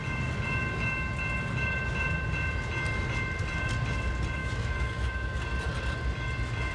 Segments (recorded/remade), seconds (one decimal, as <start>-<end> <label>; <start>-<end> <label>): 0.0-4.4 recorded; 4.4-5.4 remade; 5.4-6.7 recorded

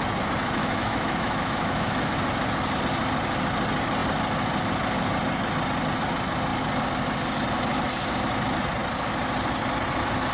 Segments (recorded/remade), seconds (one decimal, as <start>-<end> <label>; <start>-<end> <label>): 0.0-0.6 recorded; 0.6-2.1 remade; 2.1-10.3 recorded

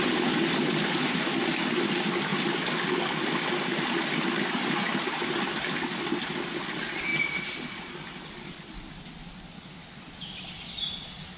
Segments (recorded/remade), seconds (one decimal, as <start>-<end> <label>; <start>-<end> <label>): 0.0-11.4 recorded

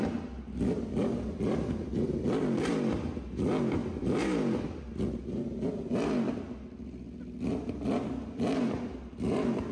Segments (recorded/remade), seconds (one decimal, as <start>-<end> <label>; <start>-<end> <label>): 0.0-9.7 recorded

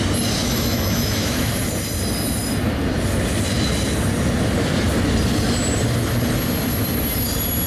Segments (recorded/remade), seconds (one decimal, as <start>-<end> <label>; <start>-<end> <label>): 0.0-0.4 recorded; 0.4-1.5 remade; 1.5-7.7 recorded

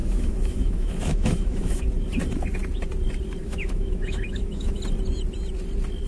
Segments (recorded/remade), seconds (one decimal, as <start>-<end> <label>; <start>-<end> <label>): 0.0-1.8 remade; 1.8-3.4 recorded; 3.4-4.8 remade; 4.8-6.1 recorded